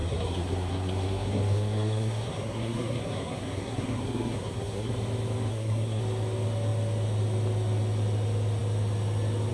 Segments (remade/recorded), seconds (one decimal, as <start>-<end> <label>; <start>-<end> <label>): 0.0-4.9 remade; 4.9-5.5 recorded; 5.5-6.0 remade; 6.0-9.5 recorded